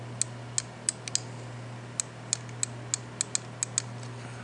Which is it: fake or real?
real